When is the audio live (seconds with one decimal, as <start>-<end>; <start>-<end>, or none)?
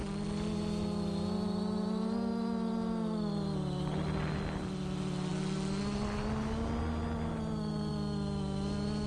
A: 0.0-9.1